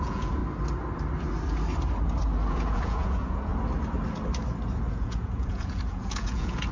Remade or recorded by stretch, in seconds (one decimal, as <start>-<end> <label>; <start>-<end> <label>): 0.0-0.4 remade; 0.4-2.5 recorded; 2.5-3.5 remade; 3.5-4.9 recorded; 4.9-6.7 remade